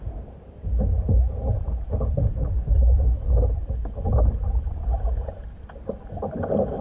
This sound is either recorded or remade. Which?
remade